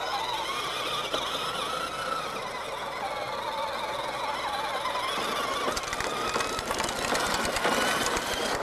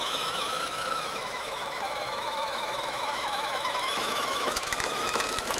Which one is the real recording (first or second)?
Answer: first